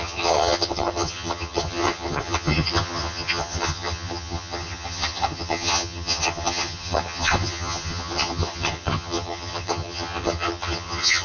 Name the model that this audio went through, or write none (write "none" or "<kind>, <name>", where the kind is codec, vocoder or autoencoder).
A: vocoder, HiFi-GAN